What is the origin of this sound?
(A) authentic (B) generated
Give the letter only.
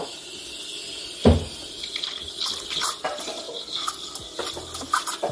A